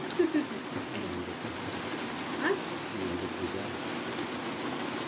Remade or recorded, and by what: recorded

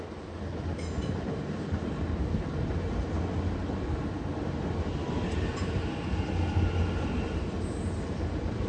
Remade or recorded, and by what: recorded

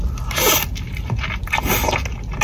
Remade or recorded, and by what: recorded